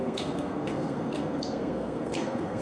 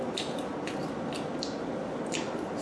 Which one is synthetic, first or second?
first